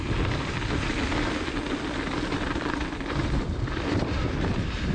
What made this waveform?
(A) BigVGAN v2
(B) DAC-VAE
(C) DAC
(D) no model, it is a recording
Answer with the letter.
D